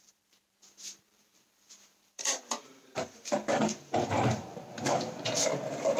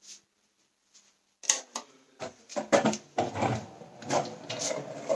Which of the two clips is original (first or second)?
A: second